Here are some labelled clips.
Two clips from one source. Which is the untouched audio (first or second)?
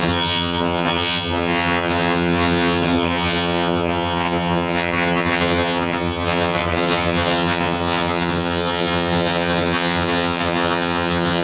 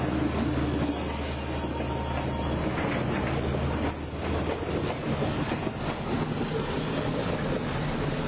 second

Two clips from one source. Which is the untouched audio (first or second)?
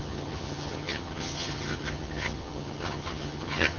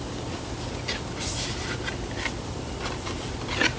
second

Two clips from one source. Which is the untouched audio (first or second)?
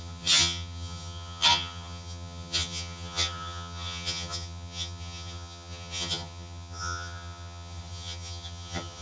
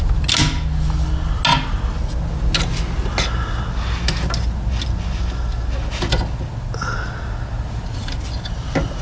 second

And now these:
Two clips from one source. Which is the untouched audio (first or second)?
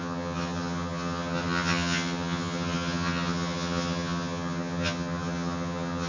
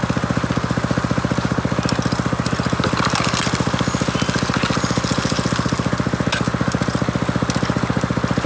second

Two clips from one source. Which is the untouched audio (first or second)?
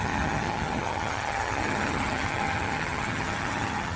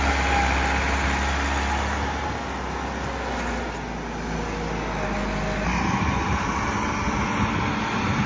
second